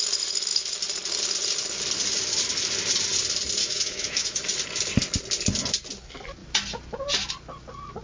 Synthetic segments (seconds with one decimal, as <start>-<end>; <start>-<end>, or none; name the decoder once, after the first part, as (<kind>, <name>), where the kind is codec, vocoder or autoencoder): 3.6-4.5 (autoencoder, DAC-VAE)